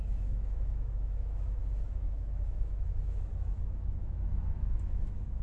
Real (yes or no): no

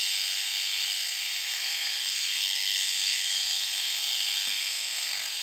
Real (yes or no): no